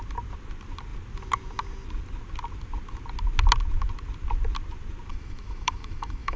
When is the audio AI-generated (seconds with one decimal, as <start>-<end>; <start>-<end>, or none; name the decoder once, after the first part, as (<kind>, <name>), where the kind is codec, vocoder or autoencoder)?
5.1-6.4 (autoencoder, DAC-VAE)